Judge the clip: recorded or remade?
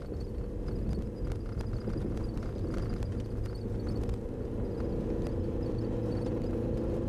recorded